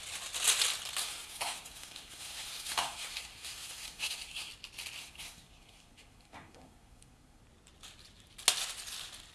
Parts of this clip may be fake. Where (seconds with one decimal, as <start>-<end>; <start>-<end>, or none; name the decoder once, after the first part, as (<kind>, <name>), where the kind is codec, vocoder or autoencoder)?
1.0-4.5 (codec, SNAC); 5.0-7.4